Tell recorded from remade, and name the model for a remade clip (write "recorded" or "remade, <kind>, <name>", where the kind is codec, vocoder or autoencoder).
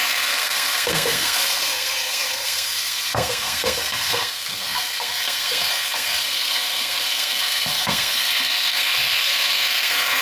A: remade, codec, SNAC